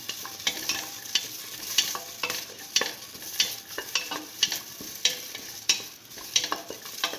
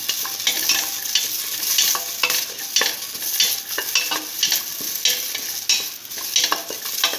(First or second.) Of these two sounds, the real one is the second